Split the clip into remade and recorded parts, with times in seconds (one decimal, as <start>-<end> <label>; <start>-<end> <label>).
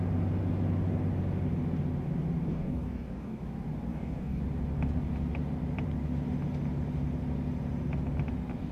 0.0-2.5 recorded; 2.5-3.4 remade; 3.4-3.9 recorded; 3.9-4.4 remade; 4.4-8.7 recorded